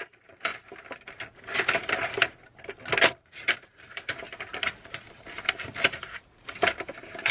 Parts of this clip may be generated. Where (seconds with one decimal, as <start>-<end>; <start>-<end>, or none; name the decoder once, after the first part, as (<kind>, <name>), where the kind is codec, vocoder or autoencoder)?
0.0-0.5 (vocoder, BigVGAN v2); 3.1-7.3